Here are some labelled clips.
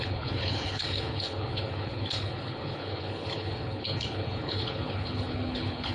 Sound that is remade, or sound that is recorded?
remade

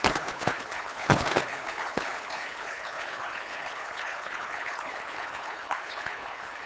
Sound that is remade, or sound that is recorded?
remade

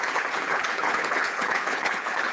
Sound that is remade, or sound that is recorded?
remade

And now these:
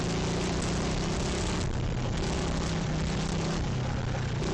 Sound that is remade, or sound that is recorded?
recorded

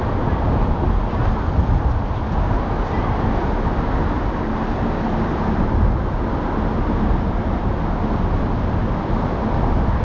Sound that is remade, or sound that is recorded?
recorded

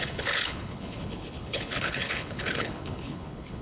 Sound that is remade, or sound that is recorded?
remade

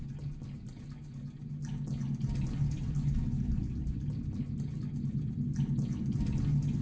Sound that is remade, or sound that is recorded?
recorded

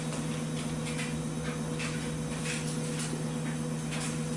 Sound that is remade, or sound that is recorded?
recorded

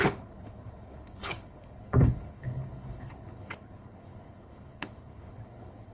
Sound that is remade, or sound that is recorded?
remade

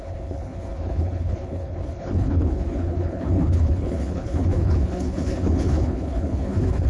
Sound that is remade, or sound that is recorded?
remade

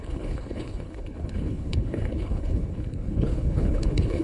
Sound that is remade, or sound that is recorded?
remade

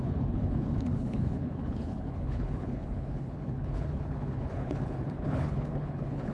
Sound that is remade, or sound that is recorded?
remade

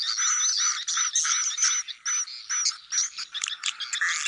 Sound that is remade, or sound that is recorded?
recorded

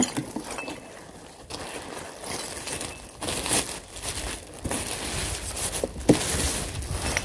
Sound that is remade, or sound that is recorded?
recorded